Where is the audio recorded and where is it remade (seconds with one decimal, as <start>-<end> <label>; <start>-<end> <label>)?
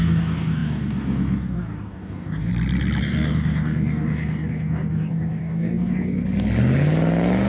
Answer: 0.0-2.5 remade; 2.5-3.0 recorded; 3.0-6.2 remade; 6.2-7.5 recorded